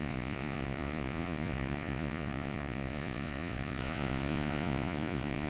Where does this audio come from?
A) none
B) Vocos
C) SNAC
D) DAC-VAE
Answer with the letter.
B